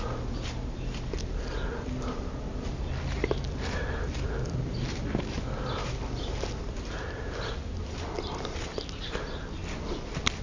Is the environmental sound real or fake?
real